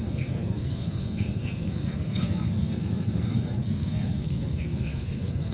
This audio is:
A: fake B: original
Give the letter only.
A